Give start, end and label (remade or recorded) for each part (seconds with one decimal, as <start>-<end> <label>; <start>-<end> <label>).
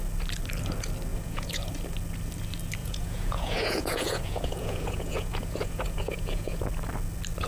0.0-1.1 recorded; 1.1-1.6 remade; 1.6-2.8 recorded; 2.8-6.6 remade; 6.6-7.5 recorded